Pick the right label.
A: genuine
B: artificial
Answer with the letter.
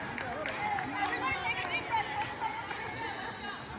A